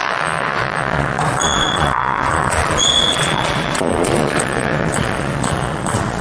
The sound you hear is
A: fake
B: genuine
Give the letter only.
A